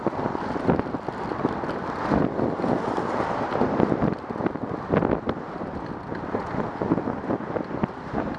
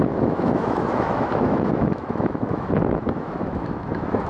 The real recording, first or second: first